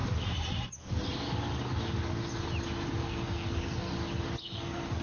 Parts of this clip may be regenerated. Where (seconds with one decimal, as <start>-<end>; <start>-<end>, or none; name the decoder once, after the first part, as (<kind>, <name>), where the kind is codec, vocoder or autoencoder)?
3.0-3.9 (codec, SNAC); 4.4-5.0